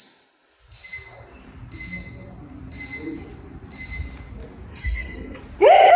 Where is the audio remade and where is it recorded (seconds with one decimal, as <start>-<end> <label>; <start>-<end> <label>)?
0.0-4.7 recorded; 4.7-5.4 remade; 5.4-6.0 recorded